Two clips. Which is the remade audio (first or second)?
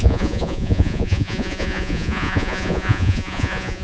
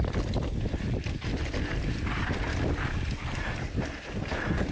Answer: first